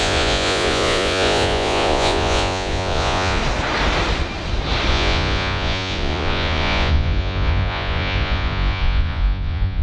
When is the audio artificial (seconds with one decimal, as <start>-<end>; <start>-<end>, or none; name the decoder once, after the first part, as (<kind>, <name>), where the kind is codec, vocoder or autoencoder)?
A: 0.0-3.4 (vocoder, Vocos); 4.9-9.8